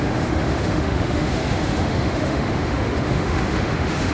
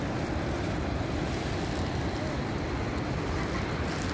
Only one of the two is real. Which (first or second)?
second